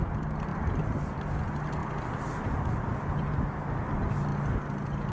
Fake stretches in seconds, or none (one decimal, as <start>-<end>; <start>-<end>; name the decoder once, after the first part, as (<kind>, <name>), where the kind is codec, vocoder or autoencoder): 0.5-1.2 (vocoder, BigVGAN v2)